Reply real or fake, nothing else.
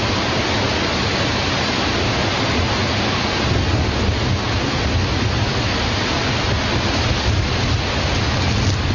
real